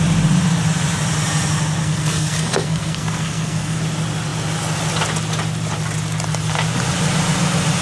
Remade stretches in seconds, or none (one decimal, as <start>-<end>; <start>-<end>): 1.8-3.8